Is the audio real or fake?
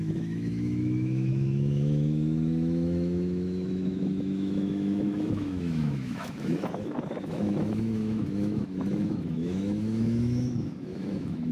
fake